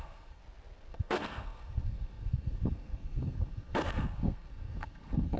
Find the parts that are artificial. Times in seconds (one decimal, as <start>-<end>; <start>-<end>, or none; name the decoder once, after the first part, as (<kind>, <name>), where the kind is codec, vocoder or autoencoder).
0.0-0.4 (codec, SNAC); 0.9-5.4